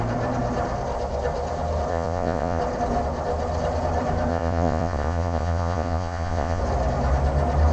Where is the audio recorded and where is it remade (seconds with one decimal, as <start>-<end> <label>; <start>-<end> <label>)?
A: 0.0-1.9 recorded; 1.9-2.6 remade; 2.6-4.3 recorded; 4.3-6.6 remade; 6.6-7.7 recorded